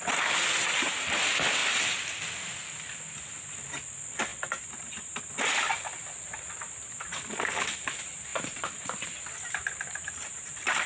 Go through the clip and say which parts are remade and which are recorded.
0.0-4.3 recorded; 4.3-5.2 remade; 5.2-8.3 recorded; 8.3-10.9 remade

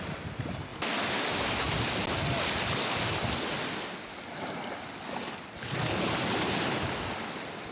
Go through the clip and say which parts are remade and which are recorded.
0.0-7.7 recorded